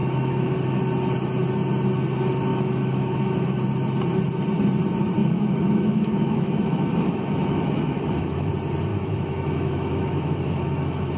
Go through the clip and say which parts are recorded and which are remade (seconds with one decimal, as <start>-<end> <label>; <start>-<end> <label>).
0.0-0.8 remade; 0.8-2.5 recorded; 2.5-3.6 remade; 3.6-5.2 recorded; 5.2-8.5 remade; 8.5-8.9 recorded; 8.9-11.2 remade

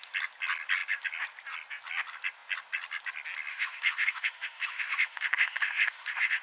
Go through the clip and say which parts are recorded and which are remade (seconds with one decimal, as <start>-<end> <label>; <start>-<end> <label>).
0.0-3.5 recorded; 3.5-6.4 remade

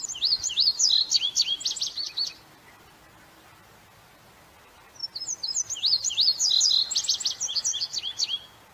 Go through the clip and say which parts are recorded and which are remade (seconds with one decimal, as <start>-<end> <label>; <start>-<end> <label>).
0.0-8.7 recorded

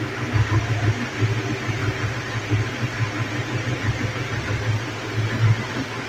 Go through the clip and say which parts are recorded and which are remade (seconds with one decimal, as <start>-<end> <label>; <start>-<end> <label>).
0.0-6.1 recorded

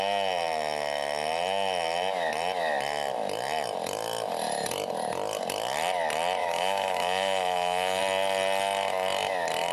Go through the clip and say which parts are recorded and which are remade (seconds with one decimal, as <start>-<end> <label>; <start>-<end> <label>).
0.0-6.4 recorded; 6.4-8.0 remade; 8.0-9.7 recorded

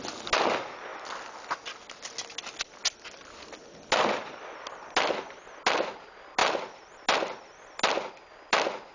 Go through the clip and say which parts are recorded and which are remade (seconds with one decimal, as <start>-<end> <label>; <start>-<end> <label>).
0.0-8.9 recorded

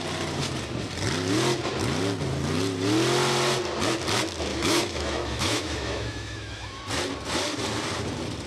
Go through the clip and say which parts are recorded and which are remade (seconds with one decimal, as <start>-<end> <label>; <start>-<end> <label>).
0.0-4.5 recorded; 4.5-6.8 remade; 6.8-8.5 recorded